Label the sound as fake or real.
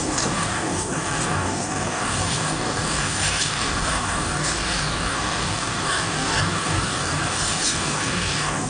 fake